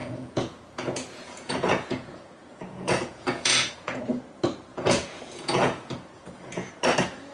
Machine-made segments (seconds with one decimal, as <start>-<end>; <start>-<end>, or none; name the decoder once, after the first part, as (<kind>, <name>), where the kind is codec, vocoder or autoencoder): 0.0-4.0 (vocoder, Vocos); 4.7-6.7